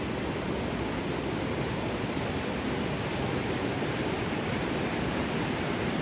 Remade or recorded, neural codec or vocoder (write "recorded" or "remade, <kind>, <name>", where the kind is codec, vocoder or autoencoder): recorded